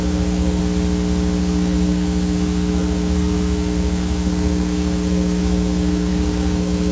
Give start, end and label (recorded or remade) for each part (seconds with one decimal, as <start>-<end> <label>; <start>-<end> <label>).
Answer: 0.0-0.6 remade; 0.6-1.4 recorded; 1.4-6.9 remade